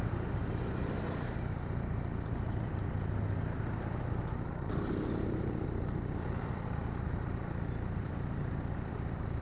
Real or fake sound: fake